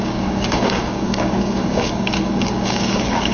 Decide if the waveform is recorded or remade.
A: remade